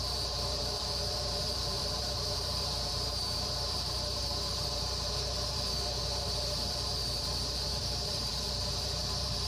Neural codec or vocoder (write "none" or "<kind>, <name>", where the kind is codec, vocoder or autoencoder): vocoder, BigVGAN v2